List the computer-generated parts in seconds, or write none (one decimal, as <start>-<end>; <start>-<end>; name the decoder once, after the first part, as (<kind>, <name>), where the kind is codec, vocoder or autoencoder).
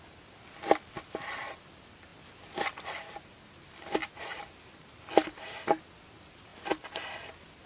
6.5-7.7 (vocoder, BigVGAN v2)